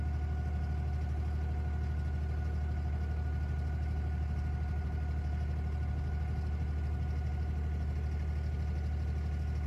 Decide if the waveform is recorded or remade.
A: recorded